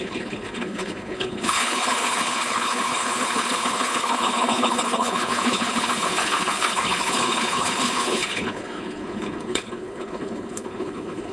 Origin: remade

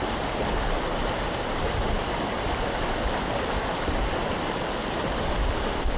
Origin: recorded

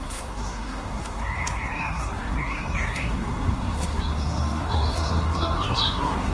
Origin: remade